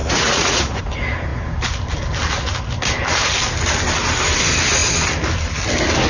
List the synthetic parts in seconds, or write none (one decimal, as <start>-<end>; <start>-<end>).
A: 0.0-0.8